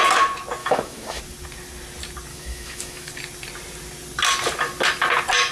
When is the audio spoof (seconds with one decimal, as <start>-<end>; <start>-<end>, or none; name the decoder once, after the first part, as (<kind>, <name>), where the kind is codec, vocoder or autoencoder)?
0.6-1.2 (autoencoder, DAC-VAE); 2.3-3.1